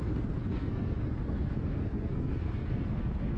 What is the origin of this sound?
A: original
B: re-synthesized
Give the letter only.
B